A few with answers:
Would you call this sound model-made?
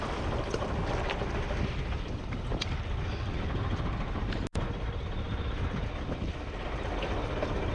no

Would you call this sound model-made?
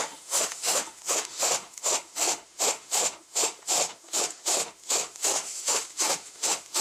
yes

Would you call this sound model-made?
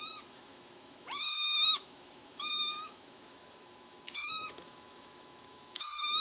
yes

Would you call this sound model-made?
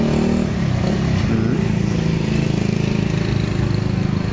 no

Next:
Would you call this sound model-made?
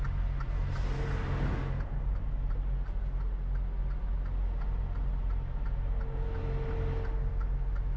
no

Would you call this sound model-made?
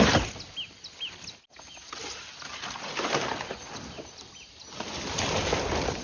no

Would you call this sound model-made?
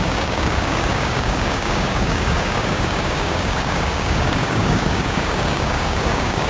yes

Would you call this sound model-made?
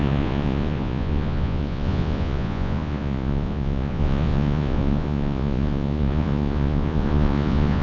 yes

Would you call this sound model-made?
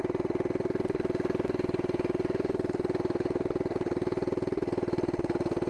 no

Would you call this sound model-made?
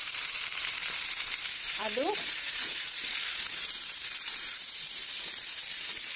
yes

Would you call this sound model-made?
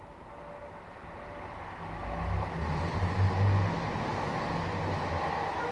no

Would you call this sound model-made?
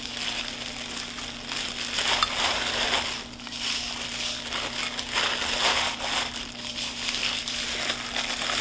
no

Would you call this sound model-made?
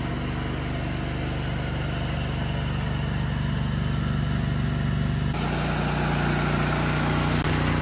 no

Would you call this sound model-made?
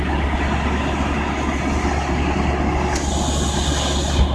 no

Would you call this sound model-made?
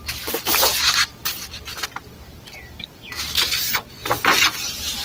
no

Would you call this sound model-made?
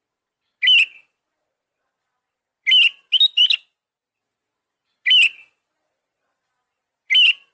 no